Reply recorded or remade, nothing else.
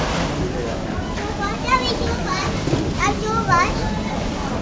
recorded